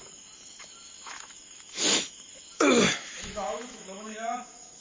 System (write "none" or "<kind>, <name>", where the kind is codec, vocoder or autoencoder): autoencoder, DAC-VAE